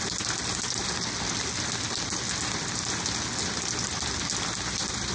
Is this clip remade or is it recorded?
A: recorded